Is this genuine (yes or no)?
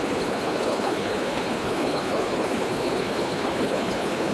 no